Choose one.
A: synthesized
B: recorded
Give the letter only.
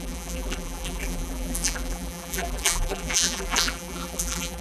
A